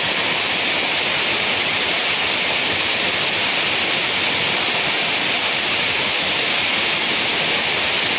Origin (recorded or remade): recorded